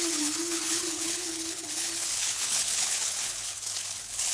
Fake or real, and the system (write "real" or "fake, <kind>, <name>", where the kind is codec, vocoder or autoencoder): fake, codec, HILCodec